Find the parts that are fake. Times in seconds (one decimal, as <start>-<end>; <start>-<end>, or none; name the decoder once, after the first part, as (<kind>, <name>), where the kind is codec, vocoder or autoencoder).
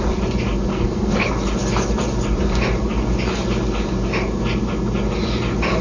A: 0.7-1.3 (codec, SNAC)